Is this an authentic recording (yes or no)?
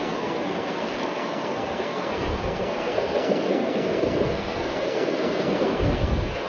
no